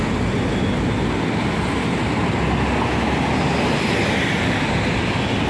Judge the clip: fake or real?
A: real